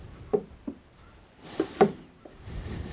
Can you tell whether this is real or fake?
real